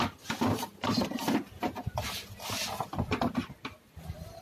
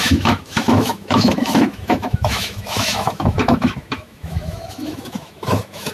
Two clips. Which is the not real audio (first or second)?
second